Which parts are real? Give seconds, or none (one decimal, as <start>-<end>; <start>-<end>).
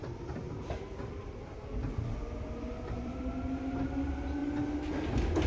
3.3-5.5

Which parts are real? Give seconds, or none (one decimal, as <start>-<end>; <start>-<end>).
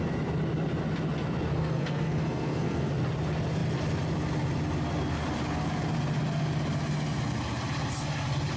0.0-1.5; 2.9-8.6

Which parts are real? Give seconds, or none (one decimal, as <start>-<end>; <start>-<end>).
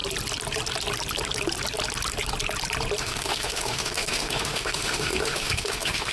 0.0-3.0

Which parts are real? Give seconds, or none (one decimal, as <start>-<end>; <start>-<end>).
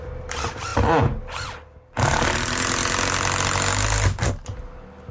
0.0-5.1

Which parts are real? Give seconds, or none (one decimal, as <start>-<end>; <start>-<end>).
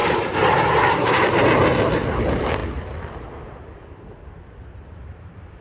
0.0-0.9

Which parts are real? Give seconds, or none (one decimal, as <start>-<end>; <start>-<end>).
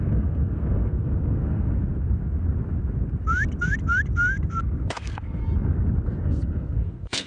1.8-4.6; 5.4-6.2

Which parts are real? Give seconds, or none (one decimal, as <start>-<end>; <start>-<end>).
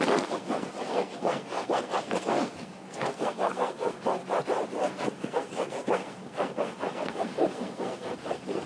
4.2-4.8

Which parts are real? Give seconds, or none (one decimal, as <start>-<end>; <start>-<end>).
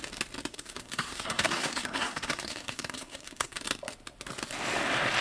0.0-0.5; 3.6-5.2